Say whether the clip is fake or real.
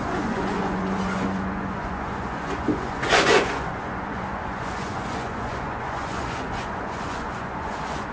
fake